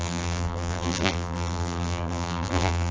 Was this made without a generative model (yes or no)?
no